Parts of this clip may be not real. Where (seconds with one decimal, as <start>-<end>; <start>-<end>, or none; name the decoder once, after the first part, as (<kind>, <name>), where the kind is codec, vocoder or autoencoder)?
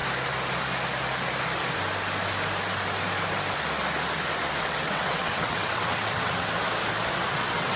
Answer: 4.6-6.5 (vocoder, WaveNeXt); 7.3-7.8